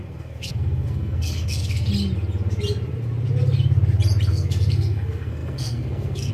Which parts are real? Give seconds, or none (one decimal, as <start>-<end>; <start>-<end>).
1.9-4.3

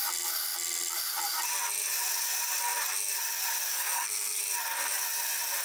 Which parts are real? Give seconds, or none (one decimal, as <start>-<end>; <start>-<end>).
0.0-3.7; 4.4-5.6

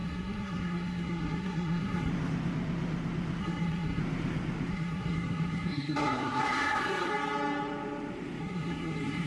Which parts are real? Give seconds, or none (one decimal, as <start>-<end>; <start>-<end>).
2.1-3.4; 4.0-4.7; 7.1-8.4